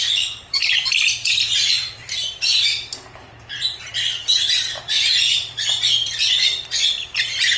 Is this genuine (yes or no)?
no